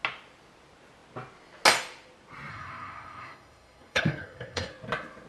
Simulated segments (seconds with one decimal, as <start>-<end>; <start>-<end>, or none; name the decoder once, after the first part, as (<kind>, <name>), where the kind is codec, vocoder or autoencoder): 2.5-4.7 (codec, SNAC)